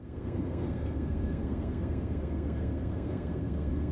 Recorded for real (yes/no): no